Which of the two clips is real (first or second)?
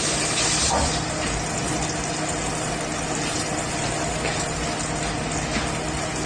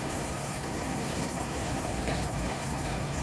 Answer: first